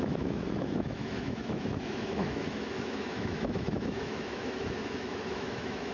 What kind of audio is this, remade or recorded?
remade